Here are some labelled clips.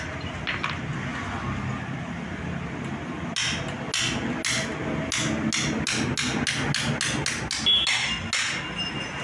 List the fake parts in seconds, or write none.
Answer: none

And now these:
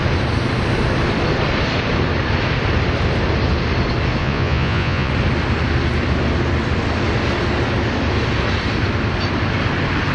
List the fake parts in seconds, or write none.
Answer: 4.2-5.1 (vocoder, Vocos)

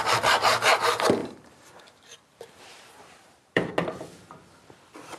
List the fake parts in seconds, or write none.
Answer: 1.2-3.7 (vocoder, BigVGAN v2)